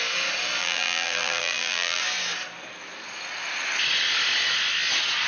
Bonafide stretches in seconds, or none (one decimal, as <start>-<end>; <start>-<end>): 0.0-0.6; 2.0-5.3